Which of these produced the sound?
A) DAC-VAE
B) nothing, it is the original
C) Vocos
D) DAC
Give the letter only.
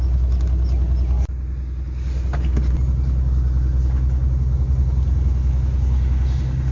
B